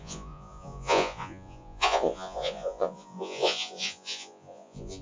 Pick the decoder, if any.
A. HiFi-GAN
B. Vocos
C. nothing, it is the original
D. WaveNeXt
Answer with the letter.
B